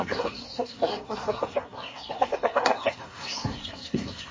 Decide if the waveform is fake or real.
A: fake